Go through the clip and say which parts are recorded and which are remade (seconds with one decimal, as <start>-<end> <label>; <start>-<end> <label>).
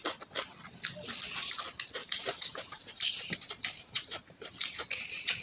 0.0-2.0 recorded; 2.0-4.9 remade; 4.9-5.4 recorded